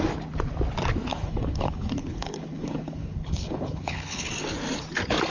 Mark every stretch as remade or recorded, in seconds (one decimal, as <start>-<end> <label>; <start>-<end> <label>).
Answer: 0.0-1.1 recorded; 1.1-4.3 remade; 4.3-5.3 recorded